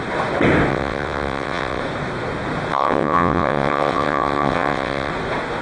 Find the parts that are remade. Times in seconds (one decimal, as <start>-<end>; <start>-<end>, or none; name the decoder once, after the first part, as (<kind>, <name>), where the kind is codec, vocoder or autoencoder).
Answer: 0.7-1.8 (vocoder, WaveNeXt); 2.7-5.1